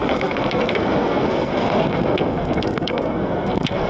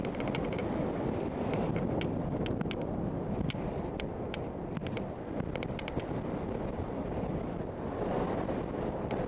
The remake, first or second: first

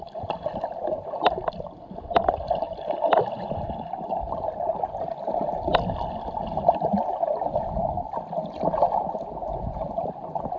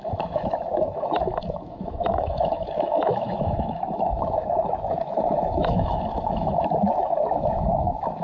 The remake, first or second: second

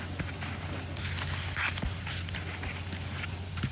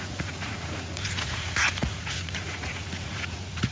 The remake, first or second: second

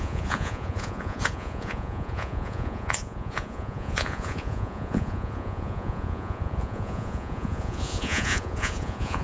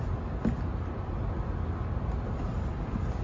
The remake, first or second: first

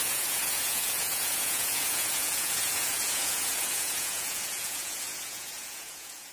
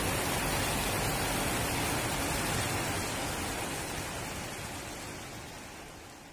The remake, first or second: first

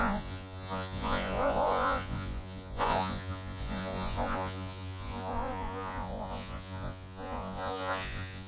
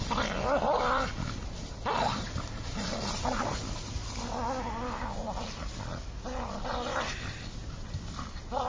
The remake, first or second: first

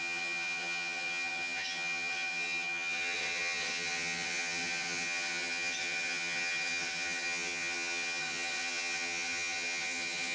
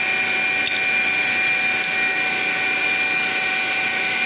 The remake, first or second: first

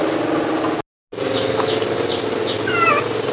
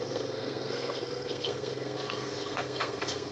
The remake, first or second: second